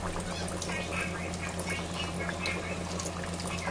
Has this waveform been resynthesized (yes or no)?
no